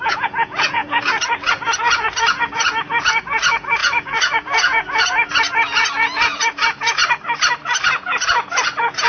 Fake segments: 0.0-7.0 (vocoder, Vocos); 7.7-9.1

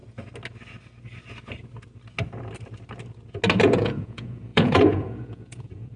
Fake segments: 3.6-6.0 (vocoder, Vocos)